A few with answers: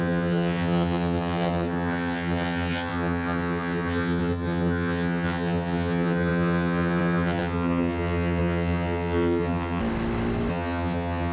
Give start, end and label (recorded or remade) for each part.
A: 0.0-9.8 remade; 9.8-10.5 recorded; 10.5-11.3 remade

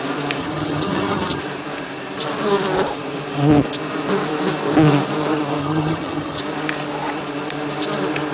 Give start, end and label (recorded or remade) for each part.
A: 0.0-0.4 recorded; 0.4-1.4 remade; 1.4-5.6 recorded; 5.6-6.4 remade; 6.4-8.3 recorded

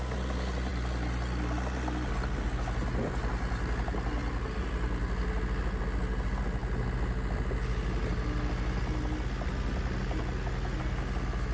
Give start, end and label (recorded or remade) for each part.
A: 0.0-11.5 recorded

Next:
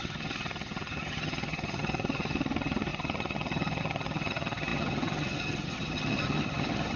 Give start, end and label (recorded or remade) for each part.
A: 0.0-7.0 remade

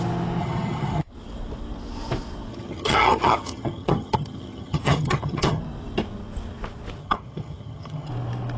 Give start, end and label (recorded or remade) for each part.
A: 0.0-0.4 recorded; 0.4-1.1 remade; 1.1-2.5 recorded; 2.5-5.6 remade; 5.6-7.0 recorded; 7.0-8.1 remade; 8.1-8.6 recorded

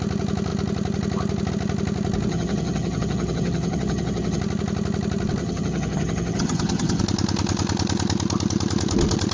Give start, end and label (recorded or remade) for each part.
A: 0.0-2.3 recorded; 2.3-4.4 remade; 4.4-5.4 recorded; 5.4-7.0 remade; 7.0-9.3 recorded

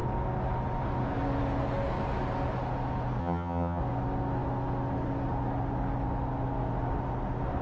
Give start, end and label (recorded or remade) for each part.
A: 0.0-3.2 recorded; 3.2-3.8 remade; 3.8-7.6 recorded